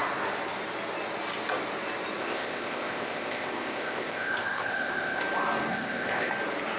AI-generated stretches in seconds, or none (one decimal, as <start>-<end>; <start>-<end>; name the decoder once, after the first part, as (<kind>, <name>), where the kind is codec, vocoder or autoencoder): 2.2-5.2 (codec, ZipCodec); 5.7-6.3